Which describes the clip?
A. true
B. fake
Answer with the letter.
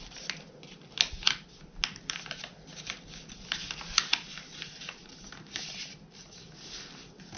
A